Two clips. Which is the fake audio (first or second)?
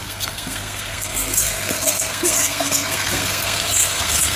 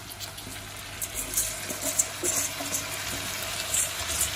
first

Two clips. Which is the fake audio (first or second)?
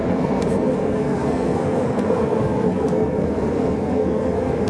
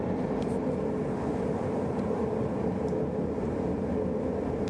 first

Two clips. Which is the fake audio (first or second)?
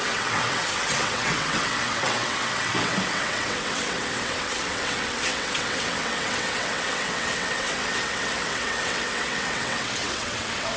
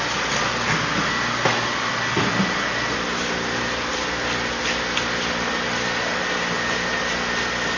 first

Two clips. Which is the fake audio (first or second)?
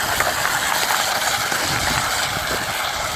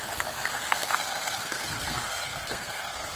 second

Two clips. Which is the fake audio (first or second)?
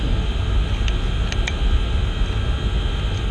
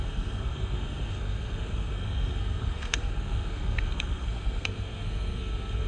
second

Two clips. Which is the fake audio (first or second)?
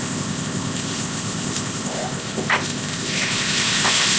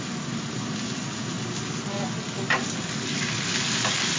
first